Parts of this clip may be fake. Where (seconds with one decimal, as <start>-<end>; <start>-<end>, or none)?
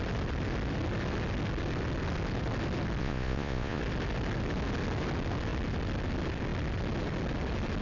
3.0-3.8